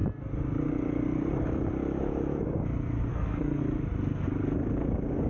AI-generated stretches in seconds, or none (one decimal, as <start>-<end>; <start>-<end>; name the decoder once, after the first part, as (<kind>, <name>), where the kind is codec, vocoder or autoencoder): 3.1-3.6 (codec, SNAC)